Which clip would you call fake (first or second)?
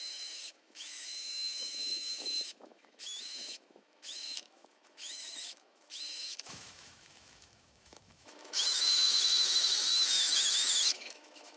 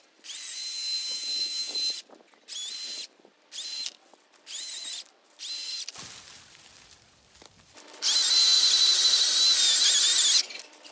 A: first